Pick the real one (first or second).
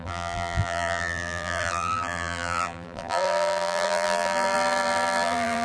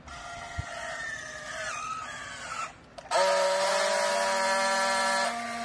second